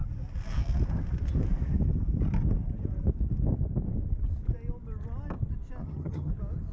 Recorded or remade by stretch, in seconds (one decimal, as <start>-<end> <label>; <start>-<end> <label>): 0.0-5.8 recorded; 5.8-6.3 remade; 6.3-6.7 recorded